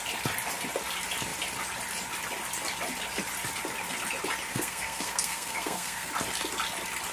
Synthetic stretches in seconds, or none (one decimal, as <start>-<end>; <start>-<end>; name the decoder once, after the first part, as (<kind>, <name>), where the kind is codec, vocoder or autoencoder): 4.5-6.1 (codec, SNAC)